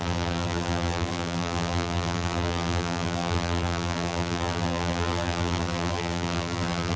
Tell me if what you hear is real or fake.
fake